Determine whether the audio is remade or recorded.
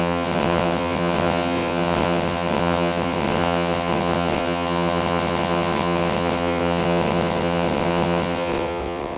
remade